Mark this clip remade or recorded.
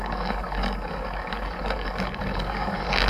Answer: remade